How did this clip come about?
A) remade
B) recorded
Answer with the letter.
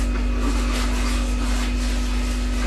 B